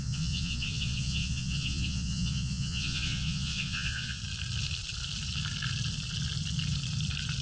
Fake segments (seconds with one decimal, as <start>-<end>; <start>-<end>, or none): 0.0-4.2